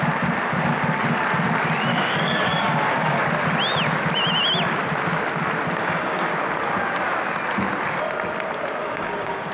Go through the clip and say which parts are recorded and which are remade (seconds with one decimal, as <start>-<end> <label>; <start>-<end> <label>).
0.0-1.9 recorded; 1.9-3.2 remade; 3.2-5.8 recorded; 5.8-6.3 remade; 6.3-8.8 recorded; 8.8-9.5 remade

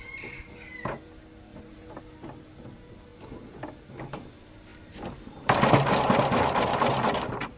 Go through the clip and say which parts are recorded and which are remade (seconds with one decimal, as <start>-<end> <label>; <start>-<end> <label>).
0.0-1.5 recorded; 1.5-2.0 remade; 2.0-7.6 recorded

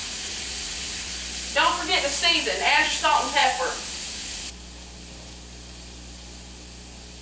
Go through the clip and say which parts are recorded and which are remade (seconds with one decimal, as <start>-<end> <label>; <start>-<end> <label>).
0.0-1.1 remade; 1.1-3.4 recorded; 3.4-4.5 remade; 4.5-7.2 recorded

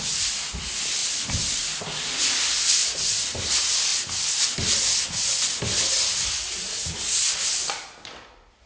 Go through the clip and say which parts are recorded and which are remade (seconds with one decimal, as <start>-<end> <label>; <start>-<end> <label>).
0.0-1.0 recorded; 1.0-1.6 remade; 1.6-2.8 recorded; 2.8-3.5 remade; 3.5-8.7 recorded

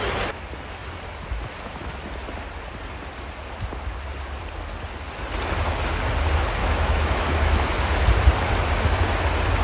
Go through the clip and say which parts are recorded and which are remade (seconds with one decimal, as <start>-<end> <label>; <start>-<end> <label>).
0.0-6.6 recorded; 6.6-7.6 remade; 7.6-9.6 recorded

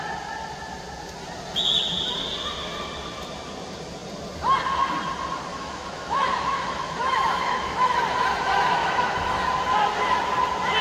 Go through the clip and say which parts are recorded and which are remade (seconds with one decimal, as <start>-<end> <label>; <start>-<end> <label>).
0.0-5.5 recorded; 5.5-8.0 remade; 8.0-8.8 recorded; 8.8-9.4 remade; 9.4-10.8 recorded

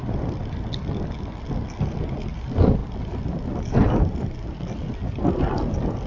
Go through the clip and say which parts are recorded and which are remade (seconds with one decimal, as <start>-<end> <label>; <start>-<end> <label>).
0.0-6.1 recorded